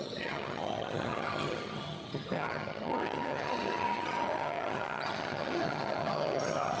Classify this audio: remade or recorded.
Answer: remade